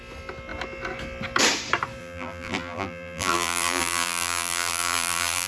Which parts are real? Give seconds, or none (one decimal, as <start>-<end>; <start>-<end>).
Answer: 0.0-2.0